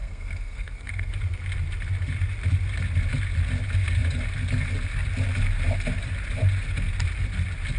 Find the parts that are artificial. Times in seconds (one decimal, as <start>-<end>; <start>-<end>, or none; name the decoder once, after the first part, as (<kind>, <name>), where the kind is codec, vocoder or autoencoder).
0.0-1.1 (codec, SNAC)